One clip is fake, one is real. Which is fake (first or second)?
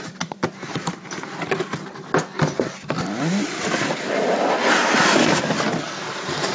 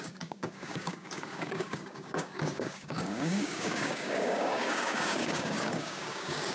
second